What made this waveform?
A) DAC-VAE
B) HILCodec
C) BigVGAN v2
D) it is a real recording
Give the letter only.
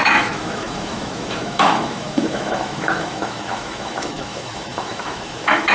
A